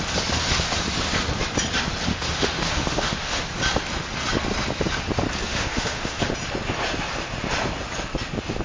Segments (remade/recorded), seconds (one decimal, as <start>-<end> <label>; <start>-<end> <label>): 0.0-2.1 recorded; 2.1-3.4 remade; 3.4-5.5 recorded; 5.5-6.3 remade; 6.3-8.6 recorded